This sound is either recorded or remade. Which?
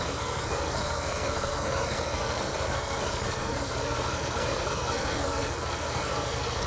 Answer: remade